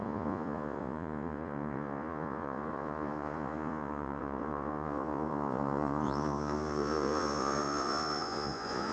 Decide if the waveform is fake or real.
fake